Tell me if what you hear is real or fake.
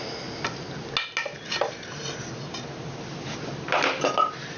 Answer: real